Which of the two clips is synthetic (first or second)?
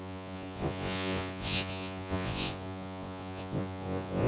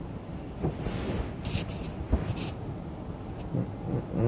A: first